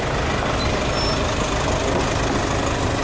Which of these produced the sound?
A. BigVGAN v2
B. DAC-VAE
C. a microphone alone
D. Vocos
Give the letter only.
C